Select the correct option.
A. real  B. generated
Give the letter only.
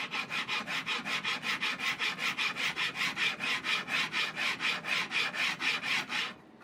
A